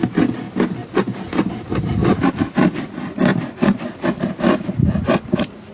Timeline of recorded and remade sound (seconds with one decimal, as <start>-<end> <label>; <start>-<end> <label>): 0.0-2.0 recorded; 2.0-2.8 remade; 2.8-3.3 recorded; 3.3-4.4 remade; 4.4-5.7 recorded

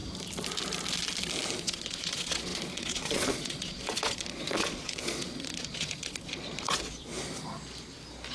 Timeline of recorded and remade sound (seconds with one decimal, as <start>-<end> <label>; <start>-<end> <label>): 0.0-1.6 recorded; 1.6-7.1 remade; 7.1-8.3 recorded

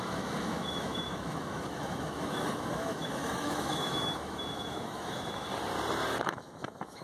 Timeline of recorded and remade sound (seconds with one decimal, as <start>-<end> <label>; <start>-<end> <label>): 0.0-5.5 remade; 5.5-6.2 recorded; 6.2-7.0 remade

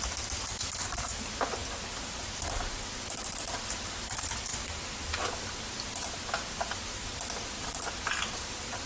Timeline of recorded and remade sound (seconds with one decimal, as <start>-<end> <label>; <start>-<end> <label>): 0.0-1.6 remade; 1.6-2.2 recorded; 2.2-8.9 remade

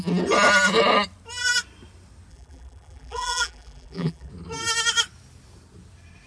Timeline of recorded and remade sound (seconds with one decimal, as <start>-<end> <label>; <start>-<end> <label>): 0.0-2.3 recorded; 2.3-4.3 remade; 4.3-6.3 recorded

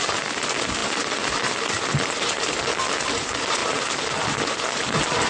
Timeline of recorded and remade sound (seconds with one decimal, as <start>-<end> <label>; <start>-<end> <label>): 0.0-3.6 remade; 3.6-4.5 recorded; 4.5-5.3 remade

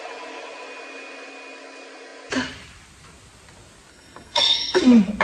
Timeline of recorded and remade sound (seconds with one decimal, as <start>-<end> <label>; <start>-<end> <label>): 0.0-3.9 recorded; 3.9-4.8 remade; 4.8-5.2 recorded